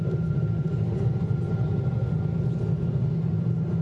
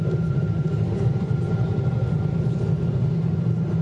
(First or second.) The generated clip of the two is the second